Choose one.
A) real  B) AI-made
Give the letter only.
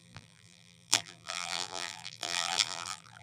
B